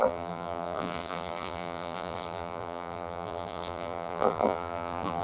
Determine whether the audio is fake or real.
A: fake